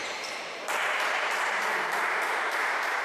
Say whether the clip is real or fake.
fake